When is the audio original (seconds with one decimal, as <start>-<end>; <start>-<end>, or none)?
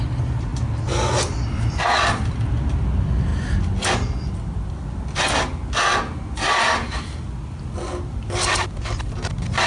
0.0-0.5; 2.8-9.7